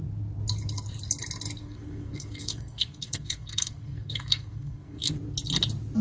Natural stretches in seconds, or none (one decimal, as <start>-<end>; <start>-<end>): 0.0-1.6; 5.1-6.0